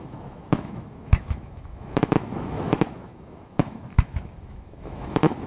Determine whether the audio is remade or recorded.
remade